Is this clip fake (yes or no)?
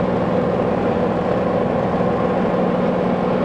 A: no